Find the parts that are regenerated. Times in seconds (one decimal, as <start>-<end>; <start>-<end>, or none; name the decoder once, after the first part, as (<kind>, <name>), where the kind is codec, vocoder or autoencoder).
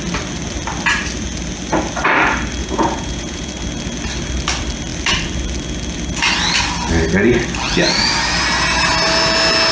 2.6-3.5 (vocoder, Vocos)